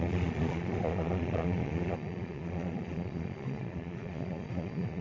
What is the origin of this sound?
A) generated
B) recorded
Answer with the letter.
A